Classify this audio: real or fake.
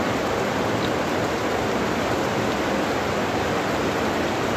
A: real